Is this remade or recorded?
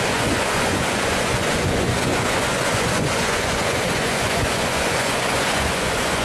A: remade